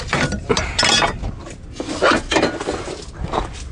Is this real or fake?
real